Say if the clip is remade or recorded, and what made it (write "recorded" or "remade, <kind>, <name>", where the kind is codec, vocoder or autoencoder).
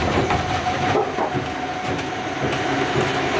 recorded